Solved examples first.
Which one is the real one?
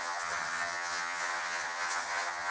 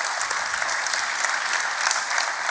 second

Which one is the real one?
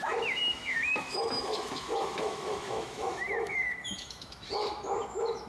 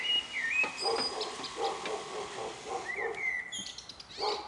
second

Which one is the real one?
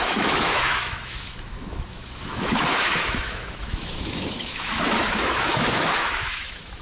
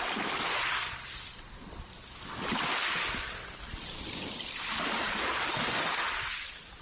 second